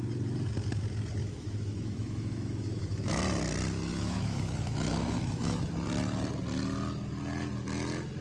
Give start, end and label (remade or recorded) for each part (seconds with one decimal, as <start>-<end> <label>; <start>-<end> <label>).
0.0-1.2 recorded; 1.2-3.1 remade; 3.1-3.9 recorded; 3.9-5.7 remade; 5.7-8.2 recorded